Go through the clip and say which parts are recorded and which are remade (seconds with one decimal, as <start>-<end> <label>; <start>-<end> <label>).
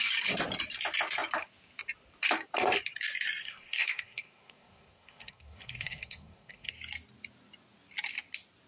0.0-3.4 recorded; 3.4-6.7 remade; 6.7-8.7 recorded